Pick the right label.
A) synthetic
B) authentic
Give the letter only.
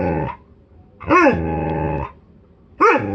B